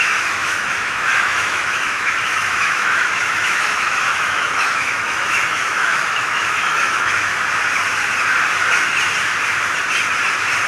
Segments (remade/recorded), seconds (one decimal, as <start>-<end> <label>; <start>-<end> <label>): 0.0-7.3 remade; 7.3-10.7 recorded